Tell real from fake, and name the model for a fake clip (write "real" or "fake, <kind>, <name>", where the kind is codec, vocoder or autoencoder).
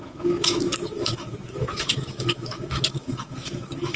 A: fake, autoencoder, DAC-VAE